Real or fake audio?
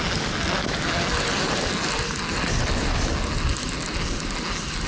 real